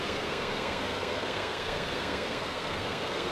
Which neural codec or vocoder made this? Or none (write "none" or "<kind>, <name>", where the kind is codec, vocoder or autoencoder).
codec, SNAC